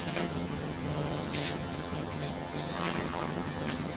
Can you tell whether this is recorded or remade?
remade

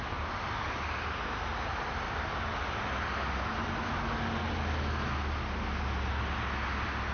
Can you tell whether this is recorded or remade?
recorded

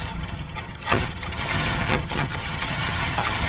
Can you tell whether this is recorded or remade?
remade